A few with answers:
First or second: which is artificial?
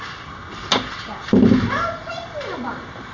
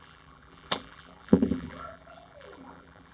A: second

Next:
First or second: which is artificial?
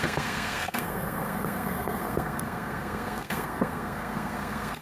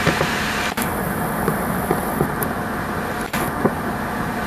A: first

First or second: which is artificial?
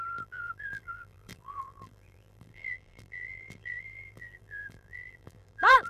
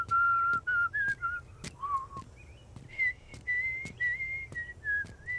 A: first